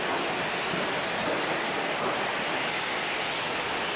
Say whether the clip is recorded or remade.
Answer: recorded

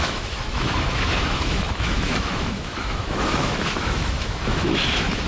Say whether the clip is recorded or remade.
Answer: remade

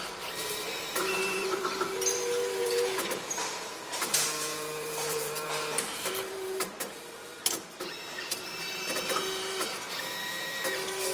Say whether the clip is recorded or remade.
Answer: remade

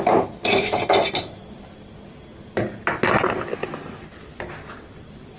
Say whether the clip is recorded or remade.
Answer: recorded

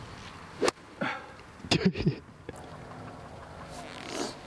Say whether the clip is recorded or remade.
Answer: recorded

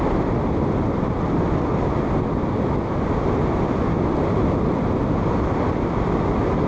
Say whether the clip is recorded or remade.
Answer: recorded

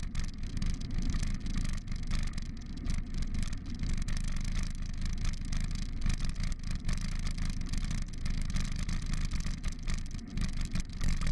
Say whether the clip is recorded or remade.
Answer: recorded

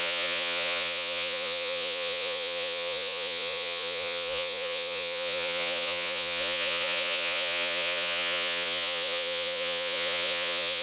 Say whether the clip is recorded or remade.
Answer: remade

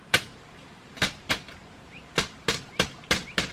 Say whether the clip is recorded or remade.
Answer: remade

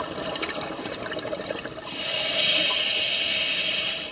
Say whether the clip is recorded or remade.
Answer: recorded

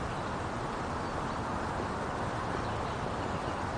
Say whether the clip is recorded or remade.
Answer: recorded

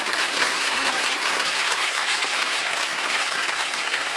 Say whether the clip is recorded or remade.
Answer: remade